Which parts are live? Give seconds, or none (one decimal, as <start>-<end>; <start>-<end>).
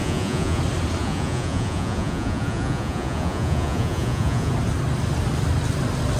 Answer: 0.6-1.0; 4.5-6.2